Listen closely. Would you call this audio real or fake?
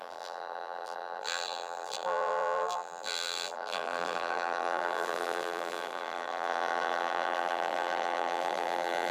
fake